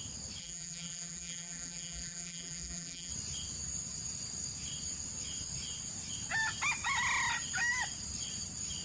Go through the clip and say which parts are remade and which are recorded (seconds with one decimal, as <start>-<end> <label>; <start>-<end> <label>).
0.0-0.4 recorded; 0.4-3.1 remade; 3.1-8.8 recorded